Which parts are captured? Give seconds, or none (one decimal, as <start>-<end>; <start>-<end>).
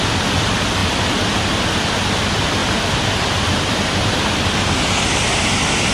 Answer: 0.0-5.9